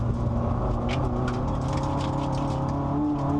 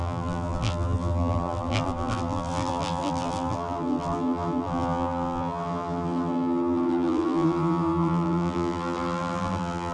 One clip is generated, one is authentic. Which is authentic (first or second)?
first